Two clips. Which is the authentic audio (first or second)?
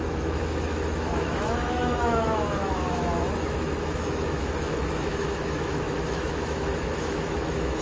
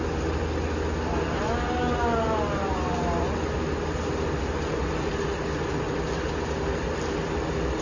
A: second